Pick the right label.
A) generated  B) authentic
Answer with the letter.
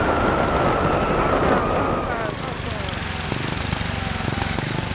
B